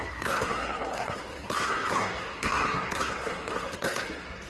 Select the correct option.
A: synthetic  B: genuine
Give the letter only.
A